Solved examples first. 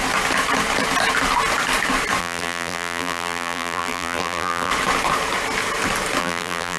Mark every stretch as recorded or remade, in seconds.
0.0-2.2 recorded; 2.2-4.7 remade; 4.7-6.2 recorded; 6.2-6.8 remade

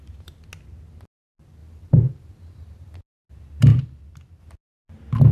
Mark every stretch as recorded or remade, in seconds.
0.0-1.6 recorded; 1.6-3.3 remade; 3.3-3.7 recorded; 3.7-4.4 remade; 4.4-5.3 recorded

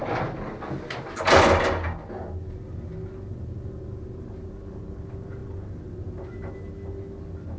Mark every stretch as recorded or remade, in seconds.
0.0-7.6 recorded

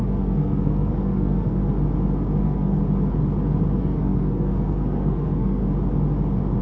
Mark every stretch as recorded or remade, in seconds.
0.0-1.6 remade; 1.6-2.4 recorded; 2.4-2.8 remade; 2.8-3.8 recorded; 3.8-5.6 remade; 5.6-6.6 recorded

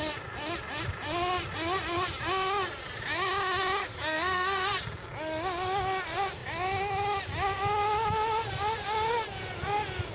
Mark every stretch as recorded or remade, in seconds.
0.0-3.8 recorded; 3.8-4.8 remade; 4.8-10.1 recorded

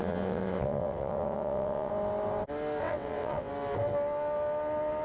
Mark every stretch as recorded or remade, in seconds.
0.0-1.9 remade; 1.9-2.8 recorded; 2.8-3.5 remade; 3.5-5.0 recorded

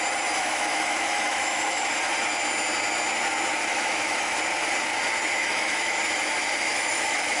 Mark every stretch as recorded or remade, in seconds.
0.0-0.4 recorded; 0.4-1.9 remade; 1.9-3.7 recorded; 3.7-4.4 remade; 4.4-5.4 recorded; 5.4-6.0 remade; 6.0-6.7 recorded; 6.7-7.4 remade

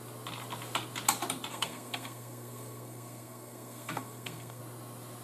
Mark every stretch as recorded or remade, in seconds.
0.0-1.5 recorded; 1.5-4.6 remade; 4.6-5.2 recorded